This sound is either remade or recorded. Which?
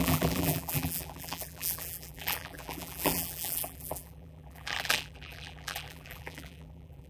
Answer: remade